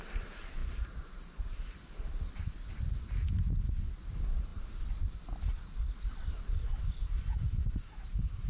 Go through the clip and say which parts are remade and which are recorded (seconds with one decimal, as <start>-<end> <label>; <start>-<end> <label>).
0.0-8.5 recorded